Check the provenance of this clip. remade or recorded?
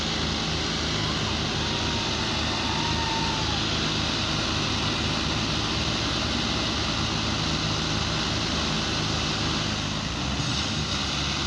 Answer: recorded